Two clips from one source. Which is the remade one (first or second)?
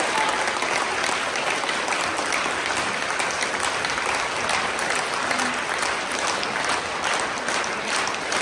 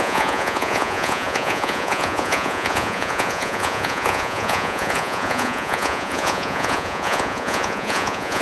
second